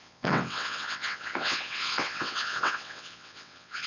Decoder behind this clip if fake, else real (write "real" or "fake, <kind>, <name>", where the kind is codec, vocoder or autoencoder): fake, vocoder, WaveNeXt